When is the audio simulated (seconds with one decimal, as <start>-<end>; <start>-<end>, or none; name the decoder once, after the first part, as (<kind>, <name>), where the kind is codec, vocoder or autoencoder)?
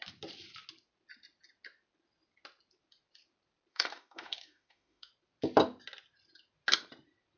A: 3.7-5.1 (autoencoder, DAC-VAE)